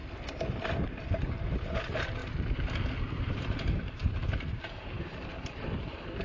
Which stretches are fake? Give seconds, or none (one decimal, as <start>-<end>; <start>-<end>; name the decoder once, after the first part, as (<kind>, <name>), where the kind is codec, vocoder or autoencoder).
1.4-2.2 (vocoder, BigVGAN v2); 3.2-6.2